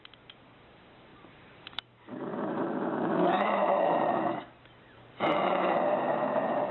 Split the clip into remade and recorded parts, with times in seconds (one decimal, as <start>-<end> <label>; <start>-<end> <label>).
0.0-6.7 remade